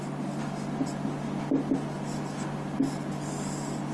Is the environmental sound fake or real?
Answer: real